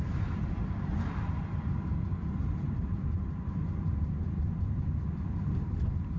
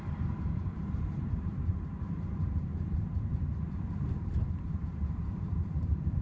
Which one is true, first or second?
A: first